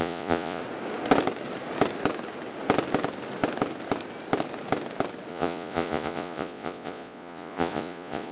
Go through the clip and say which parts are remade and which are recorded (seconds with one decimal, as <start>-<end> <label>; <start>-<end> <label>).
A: 0.0-0.6 remade; 0.6-5.3 recorded; 5.3-8.3 remade